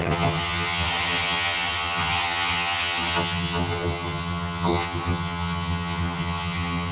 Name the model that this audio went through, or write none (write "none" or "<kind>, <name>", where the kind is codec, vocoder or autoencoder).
vocoder, HiFi-GAN